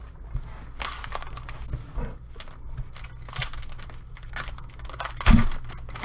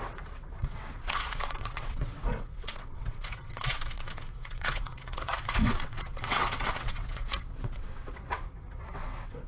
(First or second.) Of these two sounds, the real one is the first